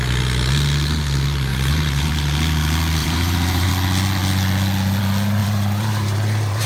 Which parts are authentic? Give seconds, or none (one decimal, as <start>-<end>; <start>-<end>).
0.0-1.5; 2.1-3.0; 3.7-5.4

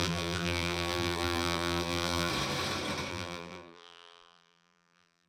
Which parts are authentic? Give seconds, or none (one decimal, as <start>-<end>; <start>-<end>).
2.3-3.1

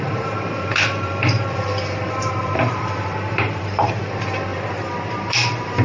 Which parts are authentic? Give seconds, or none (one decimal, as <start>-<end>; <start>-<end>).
none

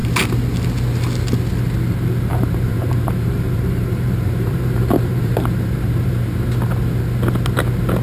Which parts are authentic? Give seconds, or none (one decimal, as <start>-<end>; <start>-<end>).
0.0-2.3; 6.5-8.0

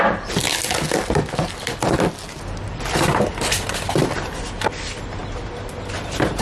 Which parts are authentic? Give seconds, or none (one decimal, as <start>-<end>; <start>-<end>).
0.0-6.4

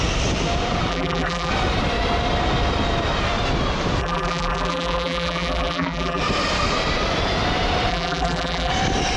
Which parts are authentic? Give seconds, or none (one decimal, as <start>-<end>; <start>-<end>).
0.0-0.9; 1.5-4.0; 6.2-7.9; 8.7-9.2

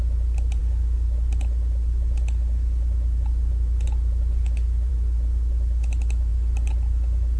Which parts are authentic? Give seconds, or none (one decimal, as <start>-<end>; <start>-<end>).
0.0-7.4